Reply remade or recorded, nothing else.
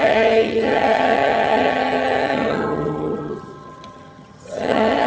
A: remade